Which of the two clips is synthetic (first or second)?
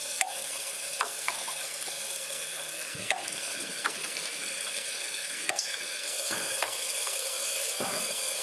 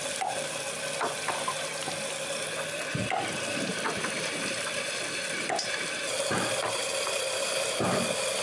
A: first